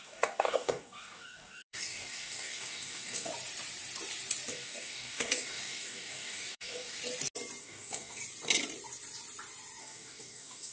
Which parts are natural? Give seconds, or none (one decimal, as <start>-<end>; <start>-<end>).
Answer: 3.3-4.5; 7.0-7.6; 8.2-9.8